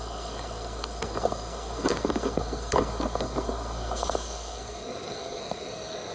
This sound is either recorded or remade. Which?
remade